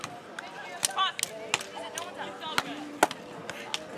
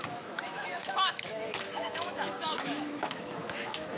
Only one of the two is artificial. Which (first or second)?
second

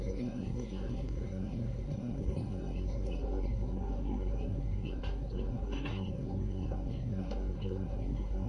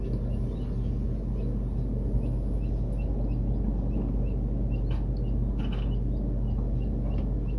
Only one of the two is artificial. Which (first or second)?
first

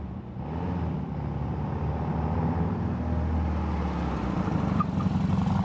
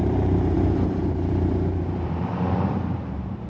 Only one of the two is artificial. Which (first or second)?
second